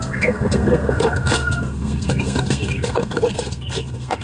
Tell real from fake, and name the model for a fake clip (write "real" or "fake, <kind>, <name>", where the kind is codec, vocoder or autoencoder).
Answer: fake, codec, SNAC